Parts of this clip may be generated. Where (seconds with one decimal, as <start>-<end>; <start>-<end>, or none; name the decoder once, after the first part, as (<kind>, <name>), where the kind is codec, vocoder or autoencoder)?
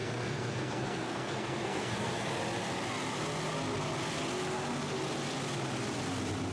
0.0-2.3 (codec, SNAC)